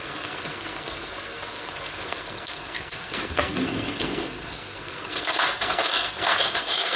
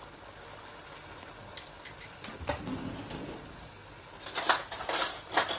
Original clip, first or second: second